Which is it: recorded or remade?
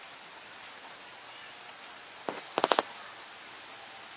recorded